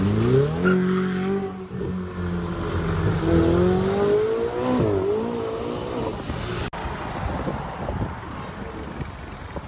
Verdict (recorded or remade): recorded